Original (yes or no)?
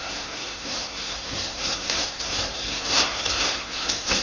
no